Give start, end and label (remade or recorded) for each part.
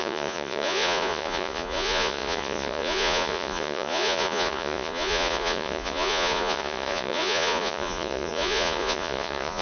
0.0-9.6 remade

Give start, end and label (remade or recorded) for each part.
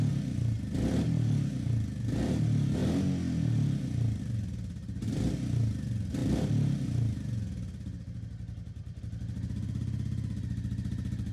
0.0-11.3 recorded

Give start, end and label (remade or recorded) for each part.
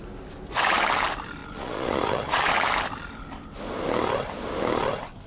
0.0-1.4 recorded; 1.4-2.5 remade; 2.5-5.3 recorded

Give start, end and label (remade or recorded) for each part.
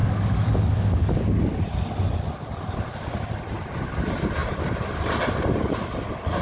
0.0-1.6 remade; 1.6-6.4 recorded